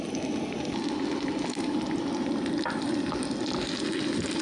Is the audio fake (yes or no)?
no